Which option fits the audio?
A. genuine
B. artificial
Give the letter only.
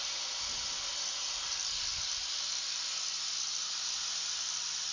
A